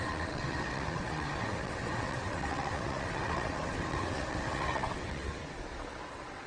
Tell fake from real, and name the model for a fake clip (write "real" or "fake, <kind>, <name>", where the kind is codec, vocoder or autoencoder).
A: fake, vocoder, WaveNeXt